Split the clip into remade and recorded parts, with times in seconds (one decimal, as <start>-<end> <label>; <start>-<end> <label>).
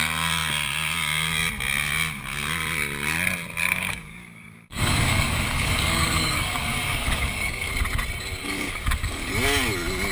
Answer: 0.0-3.6 recorded; 3.6-7.7 remade; 7.7-8.4 recorded; 8.4-9.3 remade; 9.3-10.1 recorded